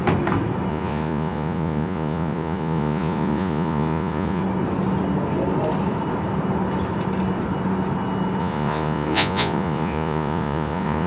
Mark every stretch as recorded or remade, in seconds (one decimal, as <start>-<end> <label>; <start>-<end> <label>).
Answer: 0.0-0.7 recorded; 0.7-4.4 remade; 4.4-8.4 recorded; 8.4-11.1 remade